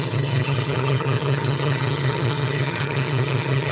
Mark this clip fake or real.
fake